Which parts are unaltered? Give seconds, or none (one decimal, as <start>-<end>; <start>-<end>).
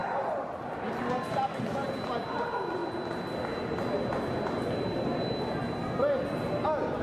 0.0-7.0